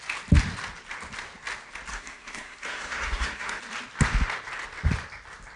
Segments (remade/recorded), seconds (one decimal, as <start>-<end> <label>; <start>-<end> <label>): 0.0-1.9 recorded; 1.9-3.6 remade; 3.6-5.6 recorded